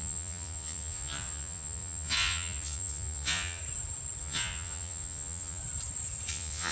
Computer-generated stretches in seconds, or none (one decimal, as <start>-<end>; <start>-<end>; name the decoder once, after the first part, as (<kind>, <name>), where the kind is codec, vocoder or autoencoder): 0.0-3.6 (vocoder, Vocos); 4.2-5.6; 6.3-6.7

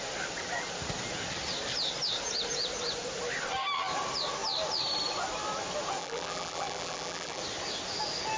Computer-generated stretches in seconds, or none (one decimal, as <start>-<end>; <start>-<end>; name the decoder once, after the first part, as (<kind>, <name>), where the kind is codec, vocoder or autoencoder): 6.0-7.4 (vocoder, BigVGAN v2)

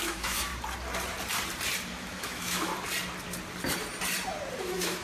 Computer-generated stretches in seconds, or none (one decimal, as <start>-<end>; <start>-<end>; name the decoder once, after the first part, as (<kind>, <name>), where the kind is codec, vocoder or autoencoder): 0.0-0.5 (autoencoder, DAC-VAE); 1.9-2.7; 4.6-5.0

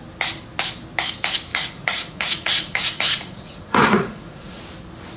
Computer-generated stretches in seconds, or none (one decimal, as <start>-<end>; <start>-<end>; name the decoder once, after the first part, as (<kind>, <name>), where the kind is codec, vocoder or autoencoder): 1.5-4.6 (vocoder, Vocos)

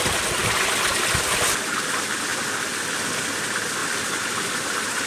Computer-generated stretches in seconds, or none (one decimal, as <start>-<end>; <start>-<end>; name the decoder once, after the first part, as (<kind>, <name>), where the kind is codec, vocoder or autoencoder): none

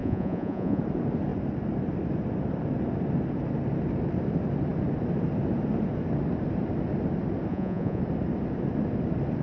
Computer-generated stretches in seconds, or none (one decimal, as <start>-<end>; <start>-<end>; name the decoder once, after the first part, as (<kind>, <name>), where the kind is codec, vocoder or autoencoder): 0.0-0.8 (vocoder, Vocos); 7.5-8.0